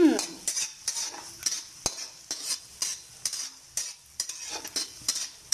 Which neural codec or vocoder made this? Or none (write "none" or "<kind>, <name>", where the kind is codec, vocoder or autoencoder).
none